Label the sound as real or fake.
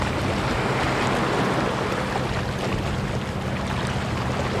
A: real